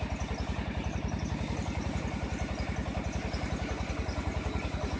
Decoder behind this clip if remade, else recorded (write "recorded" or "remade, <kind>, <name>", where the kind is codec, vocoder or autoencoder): recorded